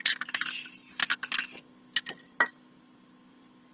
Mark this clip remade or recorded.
recorded